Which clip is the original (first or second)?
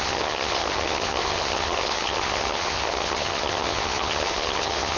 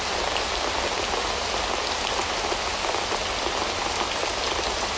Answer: second